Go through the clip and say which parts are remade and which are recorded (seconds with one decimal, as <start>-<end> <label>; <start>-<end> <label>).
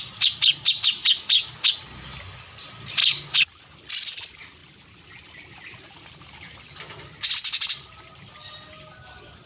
0.0-1.0 remade; 1.0-2.1 recorded; 2.1-9.5 remade